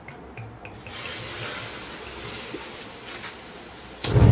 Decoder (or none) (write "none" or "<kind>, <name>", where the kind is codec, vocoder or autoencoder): none